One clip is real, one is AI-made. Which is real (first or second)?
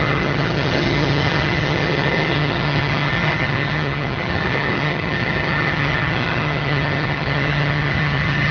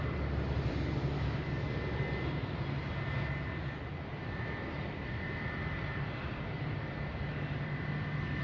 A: second